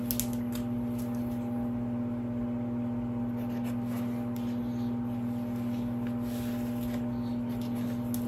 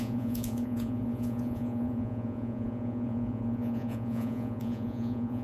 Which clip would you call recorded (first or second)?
first